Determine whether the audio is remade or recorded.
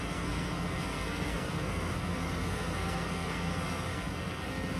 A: remade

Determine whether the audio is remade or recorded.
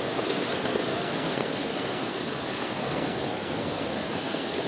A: remade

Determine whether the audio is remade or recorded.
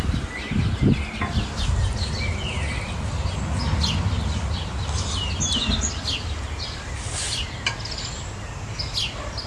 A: recorded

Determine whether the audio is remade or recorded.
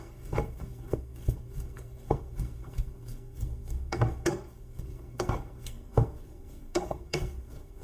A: remade